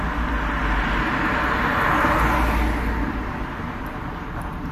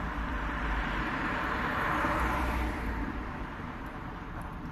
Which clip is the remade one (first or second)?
second